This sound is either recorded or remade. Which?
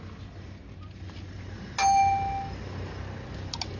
recorded